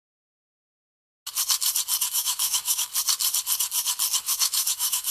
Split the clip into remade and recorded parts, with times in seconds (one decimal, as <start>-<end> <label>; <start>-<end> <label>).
0.0-1.1 remade; 1.1-2.1 recorded; 2.1-2.9 remade; 2.9-4.2 recorded; 4.2-5.1 remade